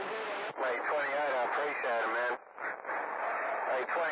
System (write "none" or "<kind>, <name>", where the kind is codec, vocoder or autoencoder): none